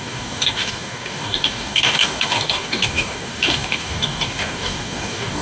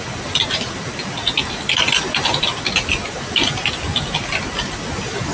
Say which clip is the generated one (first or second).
first